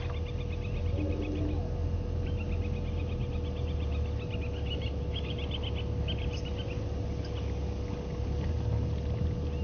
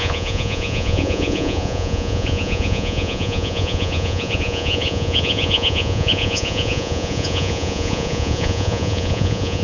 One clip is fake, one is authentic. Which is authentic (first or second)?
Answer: first